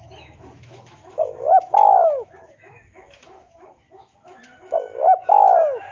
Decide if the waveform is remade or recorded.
remade